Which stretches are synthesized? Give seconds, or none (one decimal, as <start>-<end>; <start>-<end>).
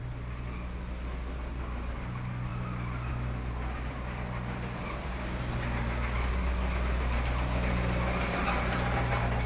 none